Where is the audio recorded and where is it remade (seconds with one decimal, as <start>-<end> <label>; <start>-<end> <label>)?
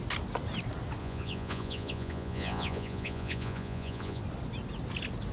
0.0-1.0 recorded; 1.0-4.2 remade; 4.2-5.3 recorded